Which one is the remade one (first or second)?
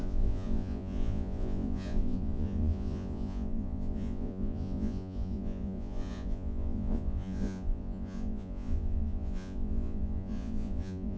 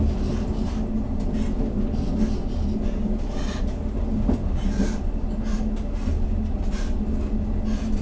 first